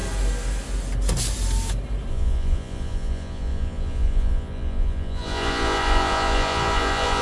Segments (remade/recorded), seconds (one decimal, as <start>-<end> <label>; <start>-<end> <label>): 0.0-2.1 recorded; 2.1-7.2 remade